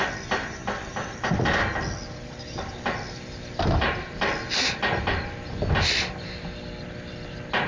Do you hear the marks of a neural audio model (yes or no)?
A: no